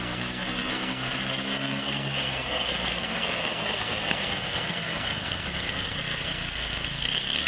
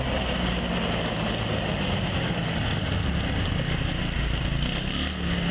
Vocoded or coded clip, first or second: first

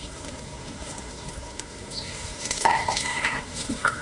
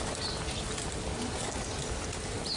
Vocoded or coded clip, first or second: first